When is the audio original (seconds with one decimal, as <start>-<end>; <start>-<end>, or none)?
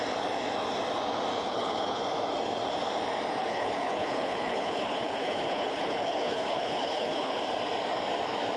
0.0-1.4; 2.0-3.4; 7.4-8.6